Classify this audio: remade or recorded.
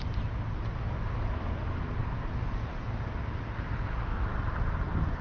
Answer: recorded